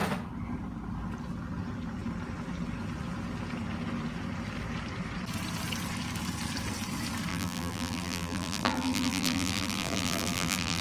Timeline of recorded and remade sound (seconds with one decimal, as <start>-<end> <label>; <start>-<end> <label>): 0.0-7.3 recorded; 7.3-10.8 remade